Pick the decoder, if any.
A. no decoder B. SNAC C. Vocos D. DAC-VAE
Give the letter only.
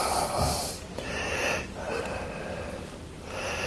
A